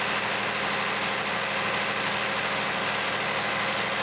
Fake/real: real